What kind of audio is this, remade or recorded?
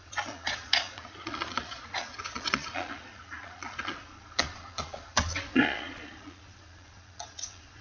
remade